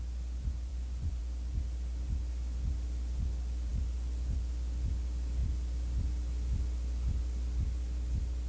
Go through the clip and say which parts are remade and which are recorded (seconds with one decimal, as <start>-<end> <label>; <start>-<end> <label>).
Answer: 0.0-0.7 recorded; 0.7-1.2 remade; 1.2-8.5 recorded

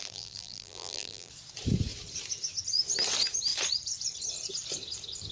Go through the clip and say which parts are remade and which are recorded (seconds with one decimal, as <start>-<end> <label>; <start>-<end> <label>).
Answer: 0.0-1.3 remade; 1.3-5.3 recorded

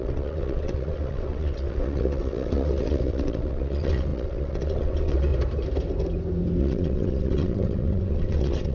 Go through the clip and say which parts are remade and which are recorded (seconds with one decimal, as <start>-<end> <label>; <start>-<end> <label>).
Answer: 0.0-5.3 remade; 5.3-6.6 recorded; 6.6-8.7 remade

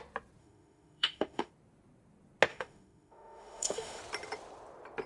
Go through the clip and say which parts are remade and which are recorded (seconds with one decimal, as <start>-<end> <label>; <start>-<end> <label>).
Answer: 0.0-0.4 recorded; 0.4-1.5 remade; 1.5-2.5 recorded; 2.5-4.0 remade; 4.0-5.1 recorded

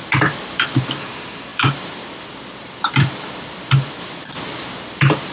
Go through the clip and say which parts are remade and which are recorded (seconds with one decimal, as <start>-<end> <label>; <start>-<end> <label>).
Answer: 0.0-5.3 remade

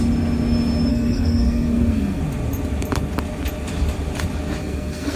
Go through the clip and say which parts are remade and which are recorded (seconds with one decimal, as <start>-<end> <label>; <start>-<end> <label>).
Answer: 0.0-0.9 recorded; 0.9-2.2 remade; 2.2-4.6 recorded; 4.6-5.2 remade

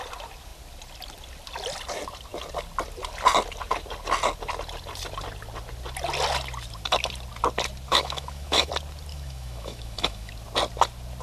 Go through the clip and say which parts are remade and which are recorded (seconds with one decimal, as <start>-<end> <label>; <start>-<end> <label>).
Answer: 0.0-7.9 recorded; 7.9-8.7 remade; 8.7-9.1 recorded; 9.1-10.3 remade; 10.3-11.2 recorded

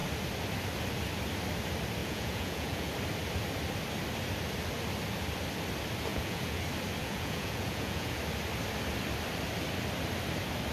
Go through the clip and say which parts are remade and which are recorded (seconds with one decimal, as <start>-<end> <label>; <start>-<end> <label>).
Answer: 0.0-2.0 recorded; 2.0-2.9 remade; 2.9-6.1 recorded; 6.1-6.6 remade; 6.6-7.0 recorded; 7.0-8.2 remade; 8.2-10.7 recorded